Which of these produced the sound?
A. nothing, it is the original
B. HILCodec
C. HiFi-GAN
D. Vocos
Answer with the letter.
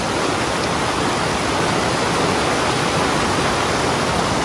A